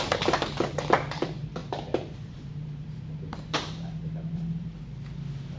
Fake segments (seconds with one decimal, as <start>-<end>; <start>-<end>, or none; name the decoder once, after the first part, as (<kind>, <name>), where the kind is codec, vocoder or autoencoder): 1.6-4.8 (vocoder, BigVGAN v2)